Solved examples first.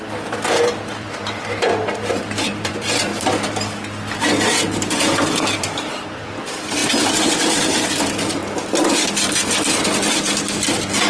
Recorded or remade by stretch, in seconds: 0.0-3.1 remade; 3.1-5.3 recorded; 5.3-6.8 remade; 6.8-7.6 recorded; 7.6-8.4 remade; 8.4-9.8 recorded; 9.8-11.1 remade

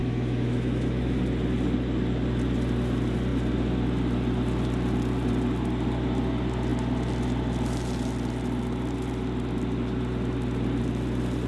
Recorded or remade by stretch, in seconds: 0.0-1.2 remade; 1.2-11.5 recorded